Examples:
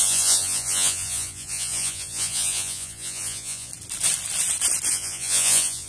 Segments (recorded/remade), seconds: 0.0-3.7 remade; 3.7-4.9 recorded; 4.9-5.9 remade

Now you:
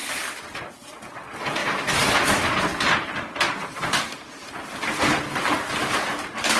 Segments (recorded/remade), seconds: 0.0-6.6 recorded

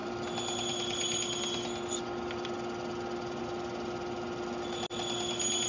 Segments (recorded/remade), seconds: 0.0-5.7 recorded

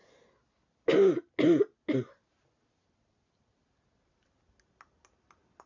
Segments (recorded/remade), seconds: 0.0-5.7 recorded